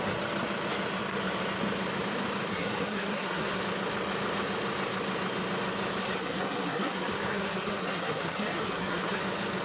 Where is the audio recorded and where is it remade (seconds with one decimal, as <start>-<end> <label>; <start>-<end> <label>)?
0.0-2.5 recorded; 2.5-3.6 remade; 3.6-6.0 recorded; 6.0-9.2 remade; 9.2-9.6 recorded